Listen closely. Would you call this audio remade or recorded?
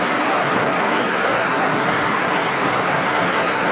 remade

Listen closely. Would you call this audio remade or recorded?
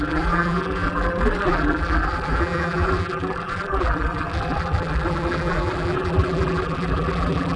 remade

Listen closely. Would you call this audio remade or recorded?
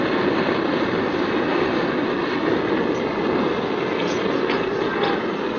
recorded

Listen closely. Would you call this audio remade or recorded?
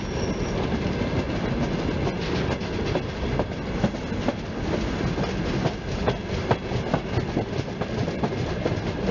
recorded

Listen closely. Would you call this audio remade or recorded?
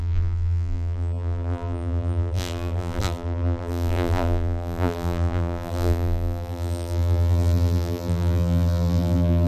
remade